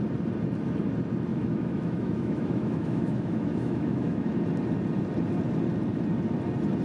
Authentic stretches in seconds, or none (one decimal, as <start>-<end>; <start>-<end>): 0.0-1.3; 4.3-6.8